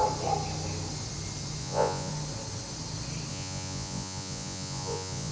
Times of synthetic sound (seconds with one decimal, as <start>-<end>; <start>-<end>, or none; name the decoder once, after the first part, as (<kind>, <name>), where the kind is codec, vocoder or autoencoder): 1.6-2.1 (vocoder, Vocos); 3.3-5.3